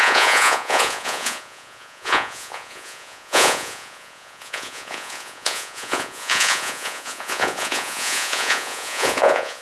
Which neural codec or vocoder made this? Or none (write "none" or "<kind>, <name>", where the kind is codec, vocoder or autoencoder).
vocoder, Vocos